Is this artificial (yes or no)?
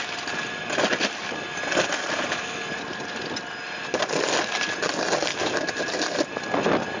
no